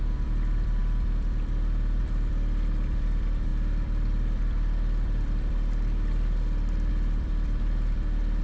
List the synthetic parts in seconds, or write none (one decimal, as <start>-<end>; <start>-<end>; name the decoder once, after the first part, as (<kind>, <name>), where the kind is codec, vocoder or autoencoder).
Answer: 0.0-8.4 (vocoder, BigVGAN v2)